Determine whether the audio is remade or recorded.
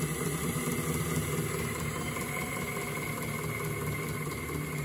recorded